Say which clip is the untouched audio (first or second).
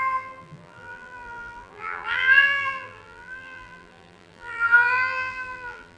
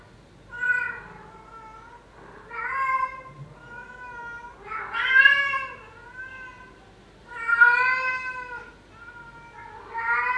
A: second